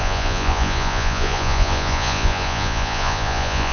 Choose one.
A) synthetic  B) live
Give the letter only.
A